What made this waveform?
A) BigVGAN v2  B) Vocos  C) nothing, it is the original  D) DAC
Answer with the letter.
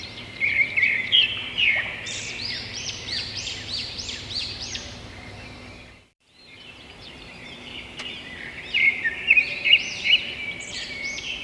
A